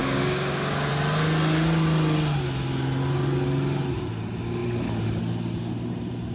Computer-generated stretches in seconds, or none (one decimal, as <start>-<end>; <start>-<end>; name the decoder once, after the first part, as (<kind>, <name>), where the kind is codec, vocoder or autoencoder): 0.0-0.9 (codec, DAC)